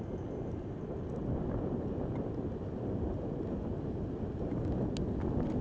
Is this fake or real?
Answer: real